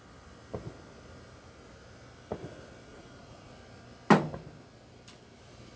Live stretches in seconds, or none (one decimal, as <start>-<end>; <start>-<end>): 0.0-2.9; 3.5-5.8